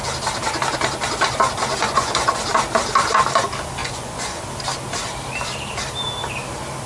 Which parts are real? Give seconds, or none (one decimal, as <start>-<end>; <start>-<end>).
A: 0.0-1.8; 2.4-3.8; 4.4-6.9